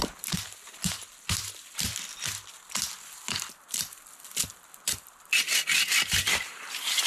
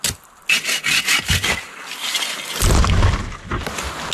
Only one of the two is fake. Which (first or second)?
first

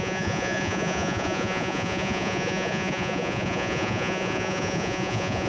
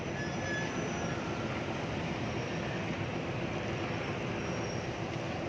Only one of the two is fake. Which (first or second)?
first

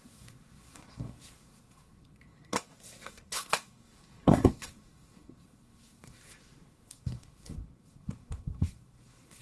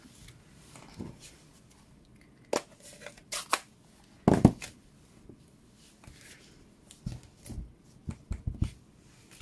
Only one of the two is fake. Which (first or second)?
first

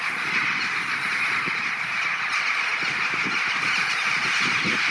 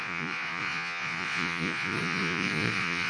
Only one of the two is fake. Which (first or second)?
second